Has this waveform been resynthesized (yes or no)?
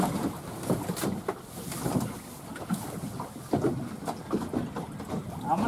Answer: no